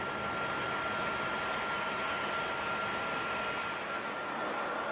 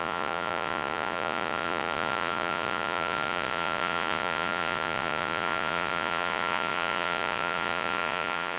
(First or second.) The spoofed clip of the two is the second